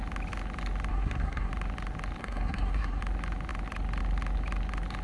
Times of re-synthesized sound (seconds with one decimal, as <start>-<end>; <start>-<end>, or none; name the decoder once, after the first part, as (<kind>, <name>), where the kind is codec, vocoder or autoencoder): 0.9-1.5 (codec, SNAC); 2.2-3.0